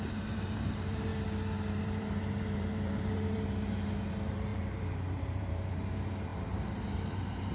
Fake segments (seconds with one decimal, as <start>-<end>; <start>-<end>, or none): 0.0-1.1; 1.8-7.5

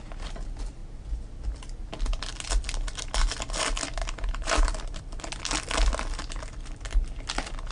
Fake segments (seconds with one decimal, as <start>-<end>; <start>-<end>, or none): 4.0-5.0

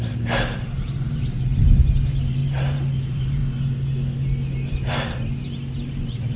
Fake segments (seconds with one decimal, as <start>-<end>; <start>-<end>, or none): 0.0-3.4; 4.7-6.4

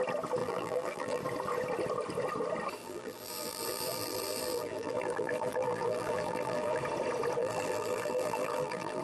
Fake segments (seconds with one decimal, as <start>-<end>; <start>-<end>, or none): 0.4-1.2; 2.8-6.8; 7.4-9.0

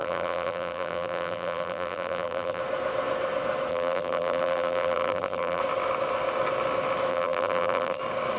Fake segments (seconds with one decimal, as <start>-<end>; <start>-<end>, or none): 0.0-2.6; 3.7-5.6; 7.1-8.0

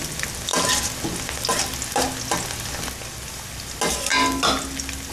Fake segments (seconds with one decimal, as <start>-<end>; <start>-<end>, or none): none